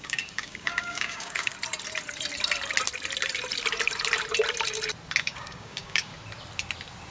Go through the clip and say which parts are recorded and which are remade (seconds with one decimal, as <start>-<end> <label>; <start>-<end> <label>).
0.0-1.5 remade; 1.5-5.2 recorded; 5.2-6.1 remade; 6.1-7.1 recorded